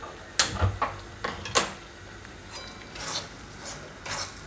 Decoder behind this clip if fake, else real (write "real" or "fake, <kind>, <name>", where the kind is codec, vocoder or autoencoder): real